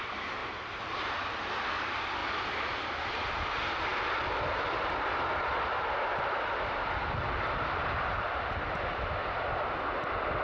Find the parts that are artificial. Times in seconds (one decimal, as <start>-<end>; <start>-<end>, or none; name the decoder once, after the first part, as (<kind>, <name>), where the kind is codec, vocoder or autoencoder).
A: 0.4-1.3 (vocoder, BigVGAN v2); 3.9-8.1